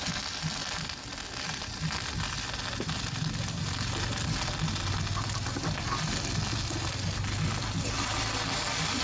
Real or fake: real